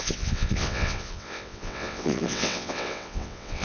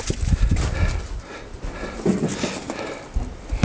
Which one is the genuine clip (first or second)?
second